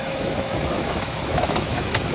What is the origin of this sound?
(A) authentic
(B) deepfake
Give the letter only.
B